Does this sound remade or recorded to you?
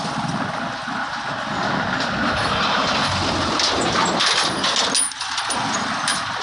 recorded